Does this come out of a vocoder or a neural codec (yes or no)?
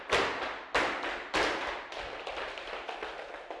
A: no